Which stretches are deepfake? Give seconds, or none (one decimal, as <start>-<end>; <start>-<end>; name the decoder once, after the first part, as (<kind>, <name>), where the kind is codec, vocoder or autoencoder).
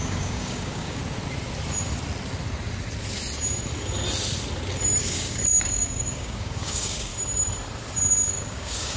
0.0-1.0 (codec, DAC); 5.0-7.1; 8.3-9.0